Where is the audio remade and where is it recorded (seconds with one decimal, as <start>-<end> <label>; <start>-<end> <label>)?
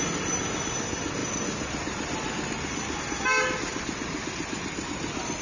0.0-5.4 recorded